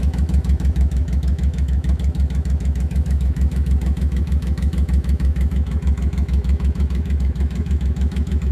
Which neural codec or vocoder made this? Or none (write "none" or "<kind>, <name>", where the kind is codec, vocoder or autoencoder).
autoencoder, DAC-VAE